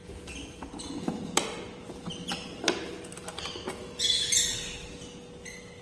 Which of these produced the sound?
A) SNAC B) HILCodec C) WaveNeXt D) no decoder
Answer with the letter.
D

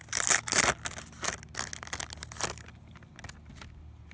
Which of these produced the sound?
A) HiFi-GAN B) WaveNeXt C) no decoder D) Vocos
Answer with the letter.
C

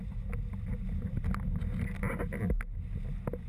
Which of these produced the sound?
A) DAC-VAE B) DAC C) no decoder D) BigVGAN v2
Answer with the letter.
C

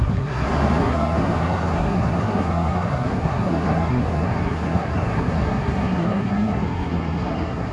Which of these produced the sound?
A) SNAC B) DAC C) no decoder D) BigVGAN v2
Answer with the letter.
A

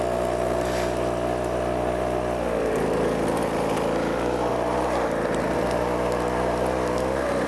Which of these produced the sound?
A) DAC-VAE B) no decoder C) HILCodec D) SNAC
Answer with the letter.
B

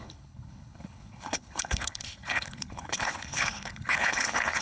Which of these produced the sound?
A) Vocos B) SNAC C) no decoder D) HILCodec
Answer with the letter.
D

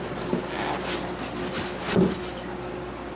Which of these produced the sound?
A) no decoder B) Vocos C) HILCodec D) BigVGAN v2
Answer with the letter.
A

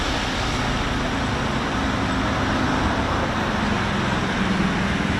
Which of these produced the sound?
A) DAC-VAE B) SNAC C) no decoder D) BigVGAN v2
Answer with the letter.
C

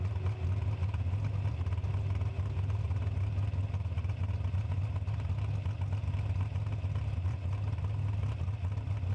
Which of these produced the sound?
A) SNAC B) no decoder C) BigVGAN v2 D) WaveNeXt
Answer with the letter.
B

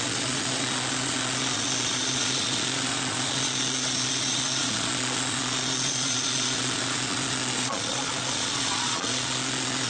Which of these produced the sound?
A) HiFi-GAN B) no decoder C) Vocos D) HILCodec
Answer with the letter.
C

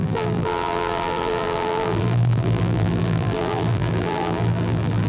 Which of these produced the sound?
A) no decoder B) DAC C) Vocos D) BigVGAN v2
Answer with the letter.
D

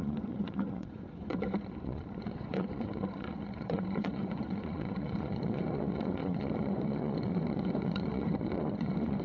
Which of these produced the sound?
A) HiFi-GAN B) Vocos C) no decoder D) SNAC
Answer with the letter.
B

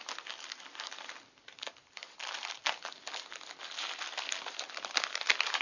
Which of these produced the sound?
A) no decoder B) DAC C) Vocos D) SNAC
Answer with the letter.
A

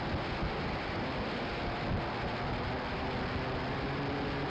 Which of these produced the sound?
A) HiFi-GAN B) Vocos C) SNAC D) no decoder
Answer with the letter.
D